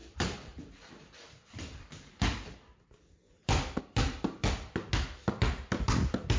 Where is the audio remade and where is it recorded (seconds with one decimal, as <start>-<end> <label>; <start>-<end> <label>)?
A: 0.0-3.8 remade; 3.8-6.4 recorded